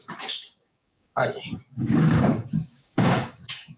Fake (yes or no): yes